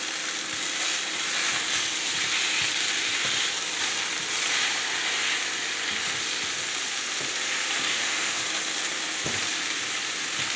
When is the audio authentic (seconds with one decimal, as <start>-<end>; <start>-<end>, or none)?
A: 0.0-7.9; 8.4-10.6